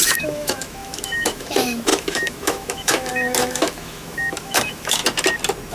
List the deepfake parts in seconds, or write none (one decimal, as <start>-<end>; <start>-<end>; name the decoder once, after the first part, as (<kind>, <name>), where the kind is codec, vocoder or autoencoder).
0.0-5.0 (autoencoder, DAC-VAE)